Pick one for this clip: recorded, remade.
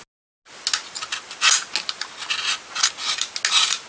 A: recorded